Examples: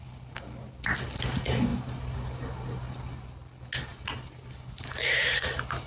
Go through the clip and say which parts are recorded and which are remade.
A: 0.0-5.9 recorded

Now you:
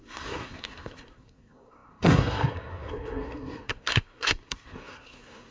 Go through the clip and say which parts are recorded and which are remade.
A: 0.0-5.5 remade

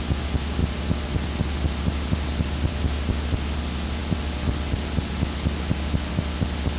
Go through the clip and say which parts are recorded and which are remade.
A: 0.0-6.8 recorded

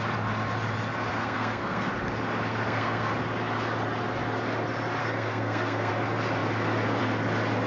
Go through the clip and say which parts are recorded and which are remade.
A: 0.0-1.1 recorded; 1.1-1.9 remade; 1.9-2.5 recorded; 2.5-3.1 remade; 3.1-5.0 recorded; 5.0-5.9 remade; 5.9-7.7 recorded